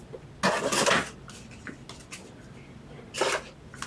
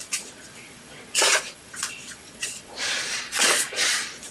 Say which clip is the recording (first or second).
first